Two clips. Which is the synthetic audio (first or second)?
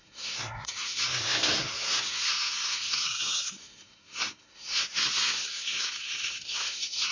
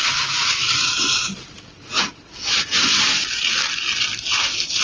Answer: first